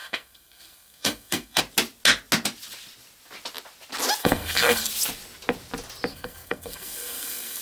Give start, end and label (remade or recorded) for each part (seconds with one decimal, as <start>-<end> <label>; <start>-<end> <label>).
0.0-1.6 remade; 1.6-4.2 recorded; 4.2-4.9 remade; 4.9-6.1 recorded; 6.1-7.6 remade